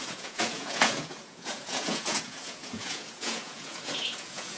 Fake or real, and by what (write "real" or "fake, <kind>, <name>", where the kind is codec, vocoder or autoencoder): fake, vocoder, Vocos